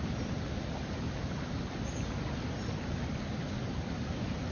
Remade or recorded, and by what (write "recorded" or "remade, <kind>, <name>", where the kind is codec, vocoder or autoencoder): recorded